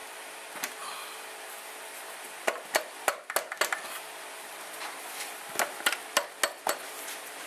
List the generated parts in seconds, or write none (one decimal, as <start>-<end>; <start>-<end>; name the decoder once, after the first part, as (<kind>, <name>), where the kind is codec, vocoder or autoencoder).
none